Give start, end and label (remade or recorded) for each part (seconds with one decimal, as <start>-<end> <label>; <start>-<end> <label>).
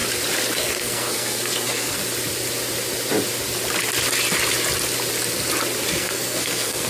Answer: 0.0-0.6 recorded; 0.6-2.0 remade; 2.0-5.9 recorded; 5.9-6.9 remade